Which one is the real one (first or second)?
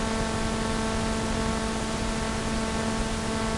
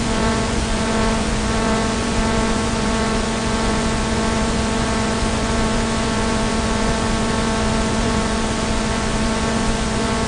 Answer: first